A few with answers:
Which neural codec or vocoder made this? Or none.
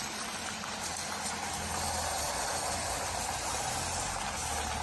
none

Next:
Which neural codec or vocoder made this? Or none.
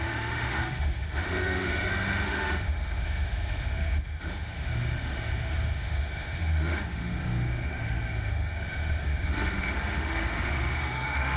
autoencoder, DAC-VAE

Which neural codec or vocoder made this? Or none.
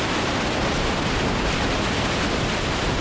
none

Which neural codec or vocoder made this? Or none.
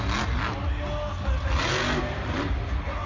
none